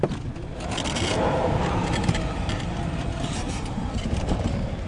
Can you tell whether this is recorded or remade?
recorded